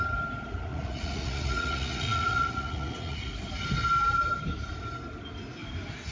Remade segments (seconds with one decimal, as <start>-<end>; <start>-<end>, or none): 0.7-3.3